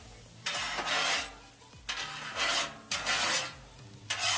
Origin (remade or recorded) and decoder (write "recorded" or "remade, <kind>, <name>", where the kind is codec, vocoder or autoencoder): recorded